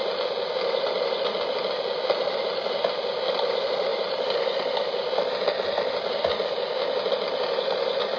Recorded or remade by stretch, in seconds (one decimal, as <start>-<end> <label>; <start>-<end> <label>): 0.0-8.2 recorded